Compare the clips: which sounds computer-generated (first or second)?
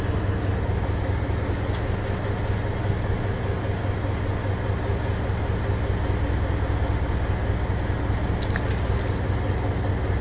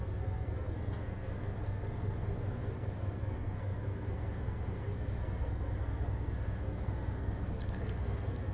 second